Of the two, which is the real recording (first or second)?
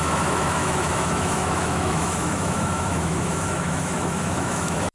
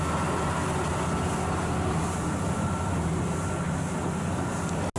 second